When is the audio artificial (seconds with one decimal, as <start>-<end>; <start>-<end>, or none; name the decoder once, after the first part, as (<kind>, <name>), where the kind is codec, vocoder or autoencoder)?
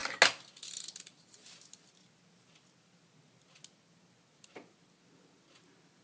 none